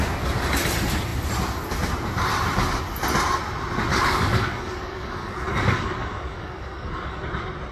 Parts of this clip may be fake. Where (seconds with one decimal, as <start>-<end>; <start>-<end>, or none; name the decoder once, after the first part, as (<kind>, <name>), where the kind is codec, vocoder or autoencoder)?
3.9-7.3 (codec, DAC)